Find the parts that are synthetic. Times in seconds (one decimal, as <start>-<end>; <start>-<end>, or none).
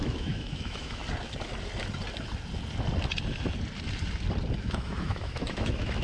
0.0-1.0; 4.6-6.0